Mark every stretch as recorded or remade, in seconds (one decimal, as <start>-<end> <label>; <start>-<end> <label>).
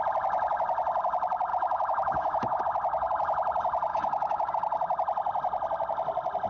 0.0-1.5 recorded; 1.5-2.6 remade; 2.6-3.9 recorded; 3.9-4.5 remade; 4.5-6.5 recorded